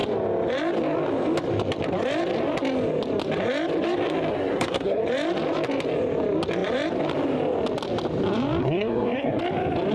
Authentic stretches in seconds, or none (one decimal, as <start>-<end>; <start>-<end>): 0.0-4.3; 5.0-8.6; 9.4-9.9